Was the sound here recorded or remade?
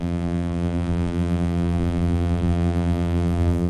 remade